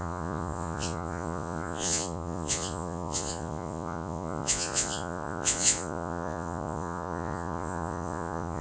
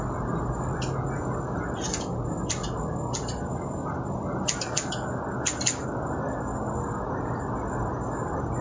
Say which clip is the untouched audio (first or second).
second